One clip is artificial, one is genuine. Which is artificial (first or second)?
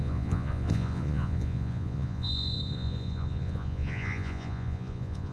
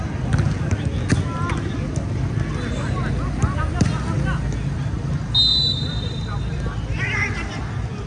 first